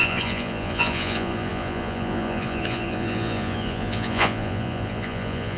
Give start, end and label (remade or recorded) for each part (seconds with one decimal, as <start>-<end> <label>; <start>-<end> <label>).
0.0-5.6 remade